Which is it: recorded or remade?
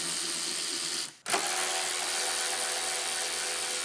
recorded